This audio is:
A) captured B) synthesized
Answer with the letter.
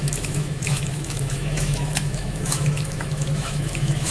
B